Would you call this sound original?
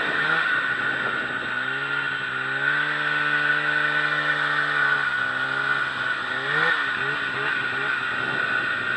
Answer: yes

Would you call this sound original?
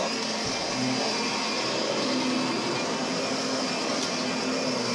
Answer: yes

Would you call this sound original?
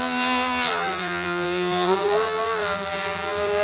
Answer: no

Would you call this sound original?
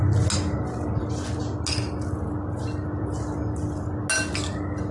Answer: yes